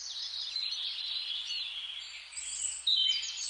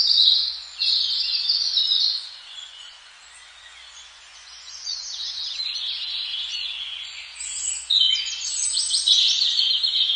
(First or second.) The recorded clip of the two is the first